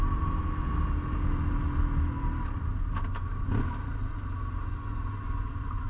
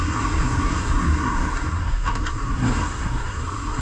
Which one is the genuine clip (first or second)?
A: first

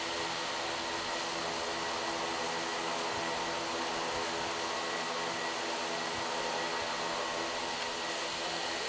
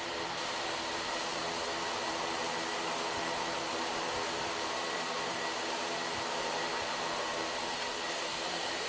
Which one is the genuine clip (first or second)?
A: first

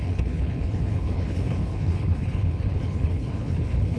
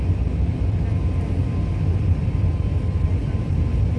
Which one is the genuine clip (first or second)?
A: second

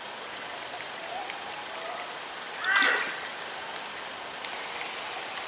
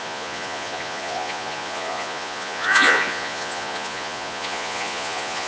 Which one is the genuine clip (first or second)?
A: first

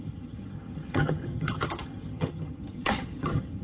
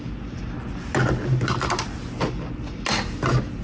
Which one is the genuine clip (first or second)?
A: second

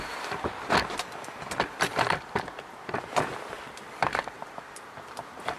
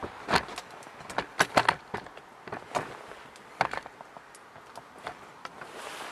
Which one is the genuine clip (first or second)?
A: second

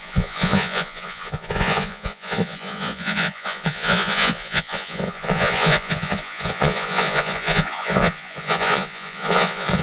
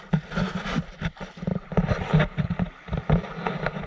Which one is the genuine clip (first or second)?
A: second